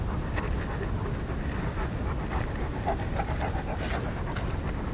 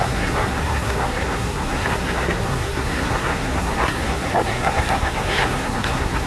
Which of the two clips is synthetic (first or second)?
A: second